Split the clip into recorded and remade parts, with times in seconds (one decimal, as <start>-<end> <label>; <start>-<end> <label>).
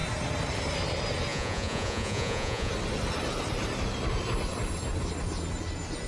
0.0-1.3 recorded; 1.3-2.7 remade; 2.7-6.1 recorded